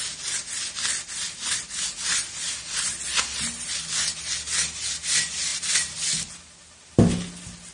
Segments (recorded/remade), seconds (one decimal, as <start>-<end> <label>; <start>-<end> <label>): 0.0-7.7 recorded